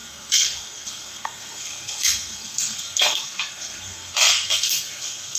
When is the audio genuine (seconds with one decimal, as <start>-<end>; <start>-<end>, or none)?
none